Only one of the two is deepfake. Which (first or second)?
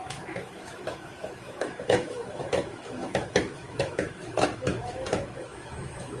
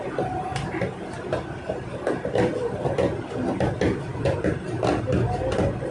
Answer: first